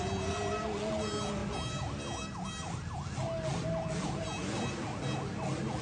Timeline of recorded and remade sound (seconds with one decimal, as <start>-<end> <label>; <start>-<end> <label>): 0.0-5.8 recorded